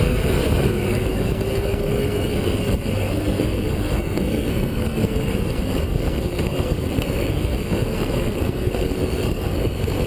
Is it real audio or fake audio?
fake